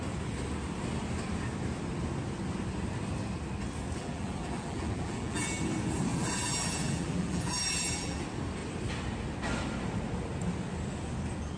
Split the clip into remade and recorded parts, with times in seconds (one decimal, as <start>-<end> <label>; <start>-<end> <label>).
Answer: 0.0-4.0 recorded; 4.0-5.5 remade; 5.5-6.1 recorded; 6.1-8.2 remade; 8.2-11.6 recorded